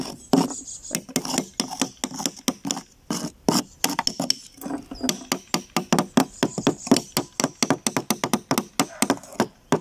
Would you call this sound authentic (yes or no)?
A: yes